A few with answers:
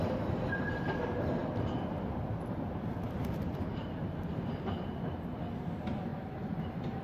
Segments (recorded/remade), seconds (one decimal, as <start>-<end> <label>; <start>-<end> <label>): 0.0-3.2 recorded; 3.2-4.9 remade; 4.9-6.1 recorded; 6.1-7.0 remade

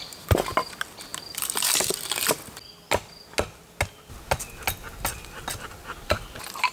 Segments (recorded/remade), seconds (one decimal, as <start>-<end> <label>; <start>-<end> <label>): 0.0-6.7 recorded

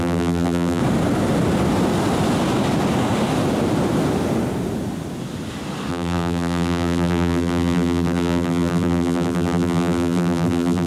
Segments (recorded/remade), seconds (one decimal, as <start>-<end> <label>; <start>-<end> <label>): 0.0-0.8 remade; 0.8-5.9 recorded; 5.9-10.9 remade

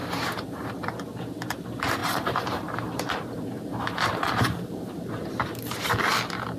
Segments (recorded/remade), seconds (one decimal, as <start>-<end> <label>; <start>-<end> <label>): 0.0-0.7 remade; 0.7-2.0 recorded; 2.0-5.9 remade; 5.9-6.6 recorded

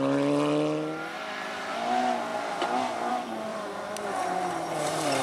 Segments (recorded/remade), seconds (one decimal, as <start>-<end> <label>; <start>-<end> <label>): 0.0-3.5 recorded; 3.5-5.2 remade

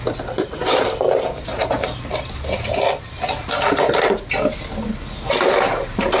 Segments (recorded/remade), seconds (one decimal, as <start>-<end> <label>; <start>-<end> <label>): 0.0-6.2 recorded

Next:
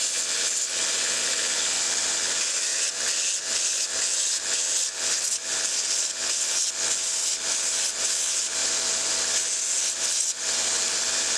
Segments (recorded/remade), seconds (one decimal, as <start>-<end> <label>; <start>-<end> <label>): 0.0-11.4 recorded

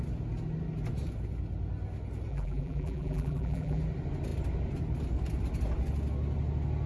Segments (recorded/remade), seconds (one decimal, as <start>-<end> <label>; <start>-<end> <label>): 0.0-2.3 recorded; 2.3-3.8 remade; 3.8-6.9 recorded